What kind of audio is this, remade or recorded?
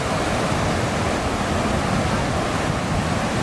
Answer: recorded